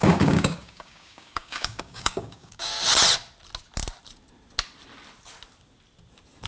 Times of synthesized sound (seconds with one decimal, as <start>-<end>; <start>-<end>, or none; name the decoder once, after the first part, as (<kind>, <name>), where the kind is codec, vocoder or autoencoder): 0.0-2.7 (codec, DAC)